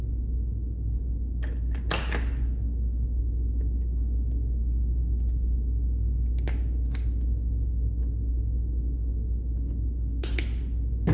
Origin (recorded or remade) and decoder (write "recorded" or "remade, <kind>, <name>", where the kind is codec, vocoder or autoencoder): recorded